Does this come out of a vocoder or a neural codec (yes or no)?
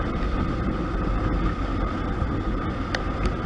no